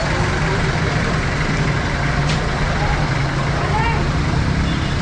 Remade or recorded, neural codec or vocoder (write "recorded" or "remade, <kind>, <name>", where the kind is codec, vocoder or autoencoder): remade, vocoder, BigVGAN v2